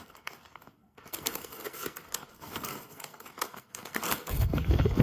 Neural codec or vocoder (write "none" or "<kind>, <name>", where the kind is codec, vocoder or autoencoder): codec, SNAC